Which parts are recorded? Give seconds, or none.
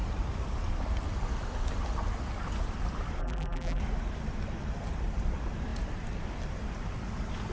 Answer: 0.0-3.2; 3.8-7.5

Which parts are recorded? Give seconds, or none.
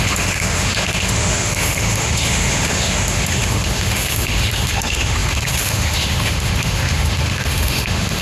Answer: none